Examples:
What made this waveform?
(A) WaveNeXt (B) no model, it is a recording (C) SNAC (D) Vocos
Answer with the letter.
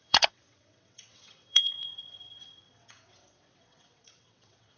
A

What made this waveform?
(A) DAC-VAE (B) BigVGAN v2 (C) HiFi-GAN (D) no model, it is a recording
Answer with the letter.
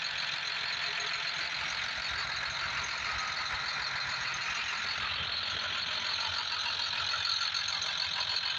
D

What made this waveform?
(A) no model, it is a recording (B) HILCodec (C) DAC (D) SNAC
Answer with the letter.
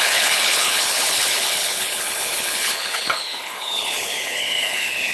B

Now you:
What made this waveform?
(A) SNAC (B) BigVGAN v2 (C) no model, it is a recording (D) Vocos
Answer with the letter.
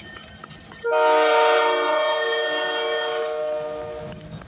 C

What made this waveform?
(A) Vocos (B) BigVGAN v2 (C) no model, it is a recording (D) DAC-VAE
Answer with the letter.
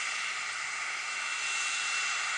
C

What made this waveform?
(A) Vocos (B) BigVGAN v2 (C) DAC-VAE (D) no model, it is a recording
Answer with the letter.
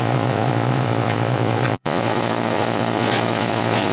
A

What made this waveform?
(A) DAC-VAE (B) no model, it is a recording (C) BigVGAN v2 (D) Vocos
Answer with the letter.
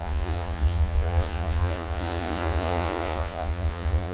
D